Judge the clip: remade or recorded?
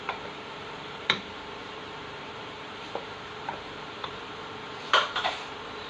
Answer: remade